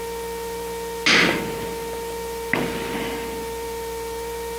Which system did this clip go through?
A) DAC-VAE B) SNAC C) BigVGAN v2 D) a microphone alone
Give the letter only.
D